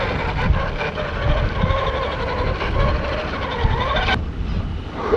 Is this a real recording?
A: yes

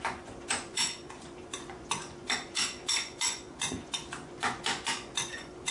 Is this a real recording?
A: no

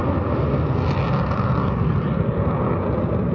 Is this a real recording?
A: yes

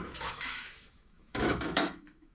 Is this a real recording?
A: no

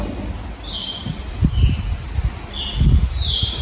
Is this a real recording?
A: yes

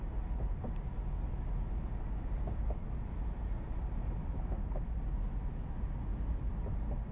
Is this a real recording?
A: yes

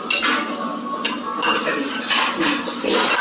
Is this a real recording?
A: no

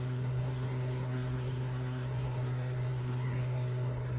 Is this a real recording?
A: no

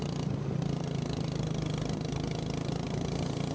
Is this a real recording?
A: yes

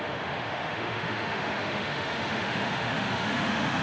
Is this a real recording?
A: no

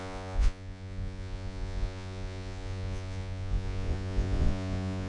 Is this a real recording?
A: no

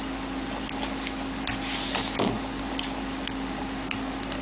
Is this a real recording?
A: yes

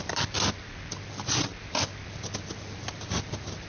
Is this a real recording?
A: yes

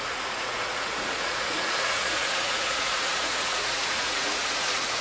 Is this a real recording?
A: no